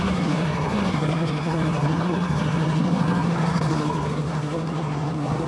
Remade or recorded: remade